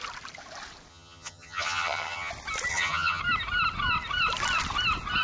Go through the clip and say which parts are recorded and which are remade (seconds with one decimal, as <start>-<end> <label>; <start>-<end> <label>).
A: 0.0-0.9 recorded; 0.9-2.3 remade; 2.3-2.7 recorded; 2.7-3.2 remade; 3.2-5.2 recorded